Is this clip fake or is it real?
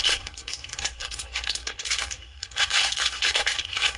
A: fake